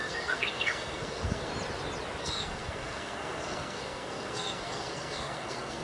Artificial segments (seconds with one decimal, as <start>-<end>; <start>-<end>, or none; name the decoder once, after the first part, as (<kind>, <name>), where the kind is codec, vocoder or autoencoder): 0.0-1.5 (codec, SNAC); 2.2-5.8